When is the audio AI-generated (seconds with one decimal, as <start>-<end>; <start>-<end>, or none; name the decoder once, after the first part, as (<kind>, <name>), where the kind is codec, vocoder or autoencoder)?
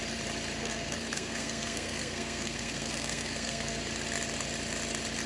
0.6-3.8 (codec, SNAC)